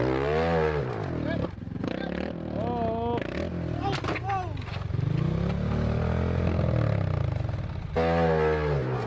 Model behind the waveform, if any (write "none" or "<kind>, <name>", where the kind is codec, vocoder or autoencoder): none